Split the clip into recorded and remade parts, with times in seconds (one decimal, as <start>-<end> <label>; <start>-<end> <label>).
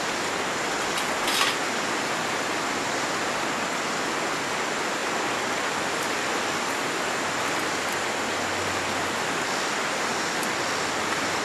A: 0.0-11.4 recorded